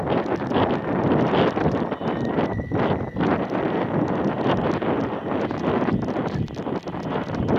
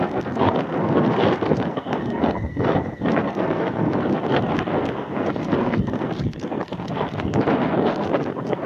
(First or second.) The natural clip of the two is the first